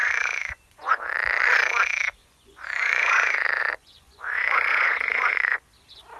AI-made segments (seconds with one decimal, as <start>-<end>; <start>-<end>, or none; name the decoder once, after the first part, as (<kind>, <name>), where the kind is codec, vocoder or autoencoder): 0.0-1.1 (vocoder, Vocos); 2.2-5.7